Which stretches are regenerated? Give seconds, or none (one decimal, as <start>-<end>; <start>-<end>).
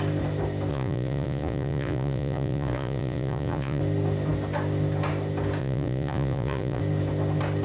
0.7-3.8; 5.6-6.8